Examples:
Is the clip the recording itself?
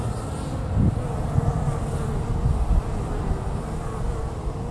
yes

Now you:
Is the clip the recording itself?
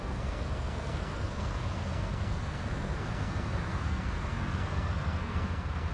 no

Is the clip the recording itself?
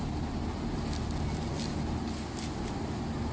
yes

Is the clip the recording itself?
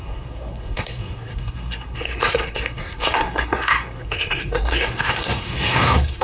no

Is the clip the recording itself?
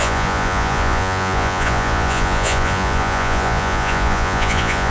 no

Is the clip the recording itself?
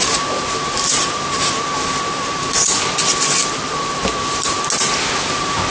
yes